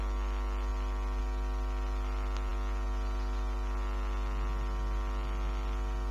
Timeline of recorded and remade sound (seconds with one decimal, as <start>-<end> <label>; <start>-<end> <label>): 0.0-6.1 recorded